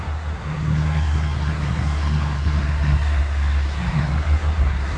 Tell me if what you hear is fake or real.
fake